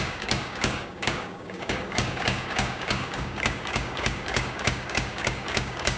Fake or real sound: fake